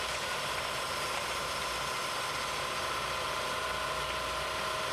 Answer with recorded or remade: recorded